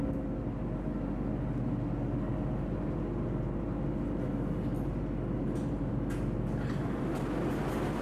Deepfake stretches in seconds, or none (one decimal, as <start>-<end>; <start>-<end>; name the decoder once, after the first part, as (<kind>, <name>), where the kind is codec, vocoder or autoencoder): none